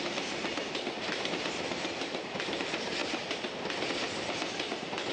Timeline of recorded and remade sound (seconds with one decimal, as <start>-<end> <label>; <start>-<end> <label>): 0.0-0.4 remade; 0.4-1.1 recorded; 1.1-3.0 remade; 3.0-5.1 recorded